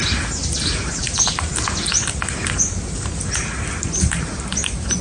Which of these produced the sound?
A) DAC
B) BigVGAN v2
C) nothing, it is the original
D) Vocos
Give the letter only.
C